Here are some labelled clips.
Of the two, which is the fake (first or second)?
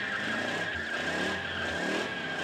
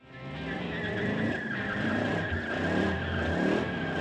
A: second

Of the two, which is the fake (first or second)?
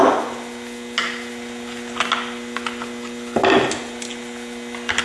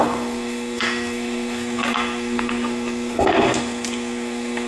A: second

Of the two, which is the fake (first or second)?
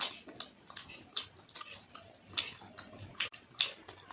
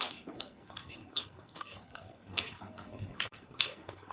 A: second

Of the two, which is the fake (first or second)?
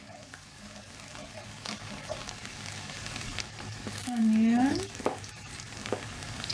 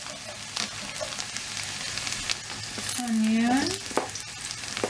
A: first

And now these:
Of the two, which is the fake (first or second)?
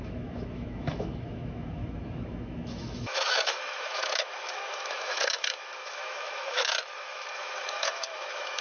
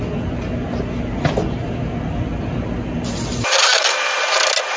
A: first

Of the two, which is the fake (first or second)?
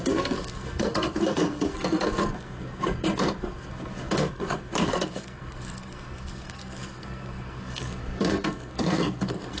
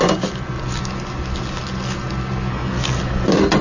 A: first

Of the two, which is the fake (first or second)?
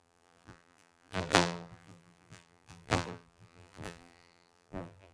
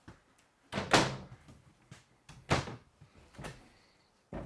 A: first